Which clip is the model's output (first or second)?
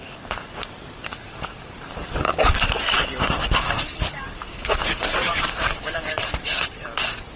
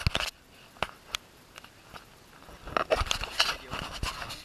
first